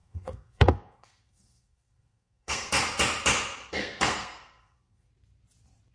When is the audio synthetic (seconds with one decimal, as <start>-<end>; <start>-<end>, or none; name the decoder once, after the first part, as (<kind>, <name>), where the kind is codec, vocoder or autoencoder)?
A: 0.0-2.7 (codec, SNAC); 3.7-5.1